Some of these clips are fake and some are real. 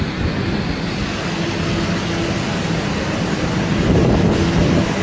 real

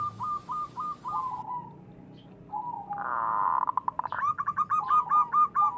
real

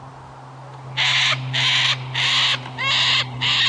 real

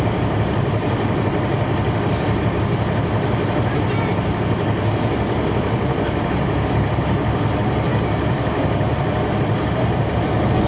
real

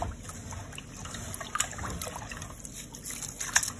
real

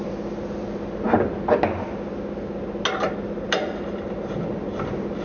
real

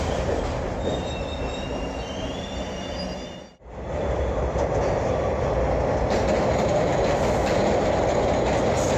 real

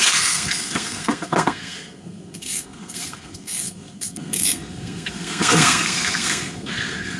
fake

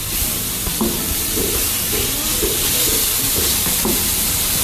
real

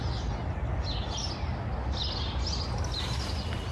real